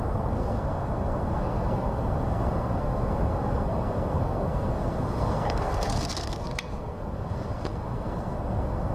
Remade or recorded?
remade